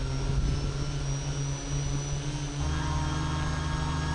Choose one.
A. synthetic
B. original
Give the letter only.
B